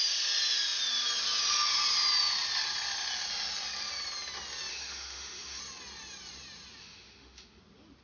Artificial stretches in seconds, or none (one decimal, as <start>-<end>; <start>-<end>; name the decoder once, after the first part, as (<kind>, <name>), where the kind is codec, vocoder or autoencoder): 4.7-5.6 (autoencoder, DAC-VAE); 6.8-7.6